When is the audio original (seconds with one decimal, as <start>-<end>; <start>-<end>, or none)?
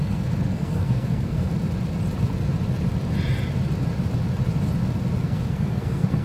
1.5-5.2